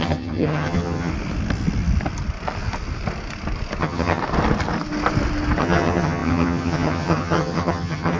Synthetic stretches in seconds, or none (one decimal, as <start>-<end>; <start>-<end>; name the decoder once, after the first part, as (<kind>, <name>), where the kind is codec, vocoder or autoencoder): 0.0-1.1 (vocoder, HiFi-GAN); 3.8-4.2; 5.6-8.2